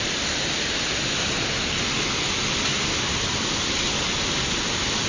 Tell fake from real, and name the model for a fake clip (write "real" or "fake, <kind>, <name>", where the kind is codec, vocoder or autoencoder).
real